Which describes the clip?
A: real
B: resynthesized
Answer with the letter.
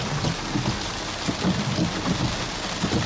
A